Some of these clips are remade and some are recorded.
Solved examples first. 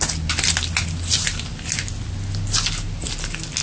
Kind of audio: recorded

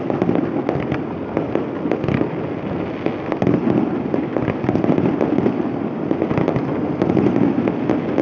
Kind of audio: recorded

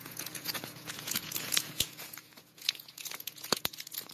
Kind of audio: remade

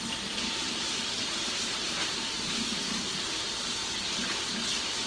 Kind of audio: recorded